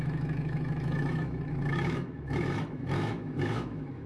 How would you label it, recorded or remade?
remade